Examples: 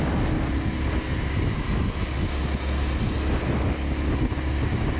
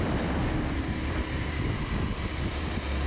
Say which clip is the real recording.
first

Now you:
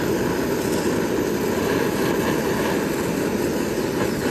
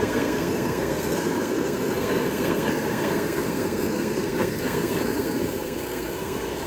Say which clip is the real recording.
first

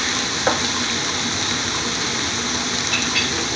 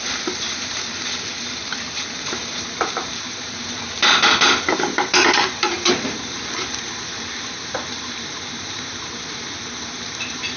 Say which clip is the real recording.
first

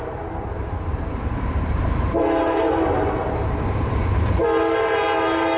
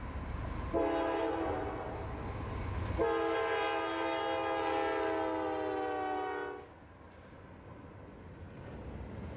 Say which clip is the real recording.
second